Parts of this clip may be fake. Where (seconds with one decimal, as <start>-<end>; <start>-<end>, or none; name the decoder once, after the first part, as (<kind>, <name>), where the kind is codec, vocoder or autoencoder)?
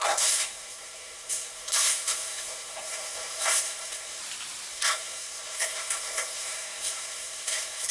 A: 0.0-4.2 (codec, SNAC); 4.7-7.9